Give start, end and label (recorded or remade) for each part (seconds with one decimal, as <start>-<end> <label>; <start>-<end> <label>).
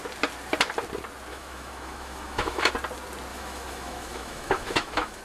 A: 0.0-1.3 recorded; 1.3-2.7 remade; 2.7-3.3 recorded; 3.3-5.2 remade